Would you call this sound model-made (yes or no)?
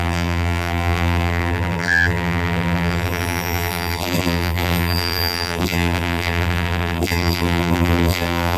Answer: yes